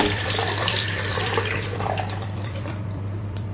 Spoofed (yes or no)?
yes